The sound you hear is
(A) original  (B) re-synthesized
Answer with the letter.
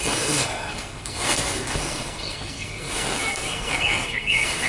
B